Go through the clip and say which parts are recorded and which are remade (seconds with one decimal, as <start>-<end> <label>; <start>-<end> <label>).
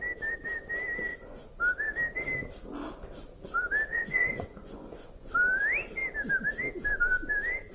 0.0-1.1 recorded; 1.1-1.6 remade; 1.6-3.9 recorded; 3.9-5.3 remade; 5.3-7.7 recorded